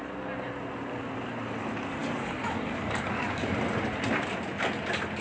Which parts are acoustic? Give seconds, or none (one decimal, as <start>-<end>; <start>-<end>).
0.0-2.0; 3.5-5.2